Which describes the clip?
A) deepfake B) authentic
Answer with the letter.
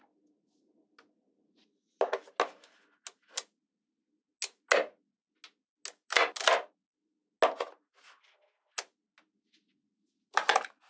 B